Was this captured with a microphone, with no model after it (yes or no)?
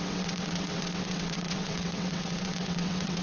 no